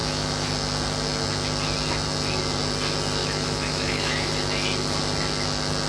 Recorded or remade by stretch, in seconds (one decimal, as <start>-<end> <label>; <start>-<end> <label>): 0.0-0.5 remade; 0.5-3.2 recorded; 3.2-4.3 remade; 4.3-5.9 recorded